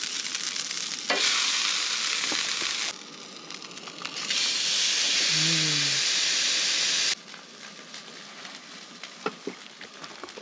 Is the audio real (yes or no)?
yes